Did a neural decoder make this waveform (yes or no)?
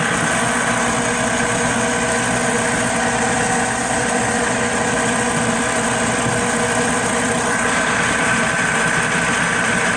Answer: no